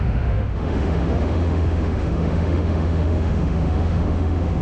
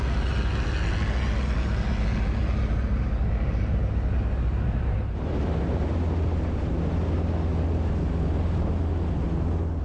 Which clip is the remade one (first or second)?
first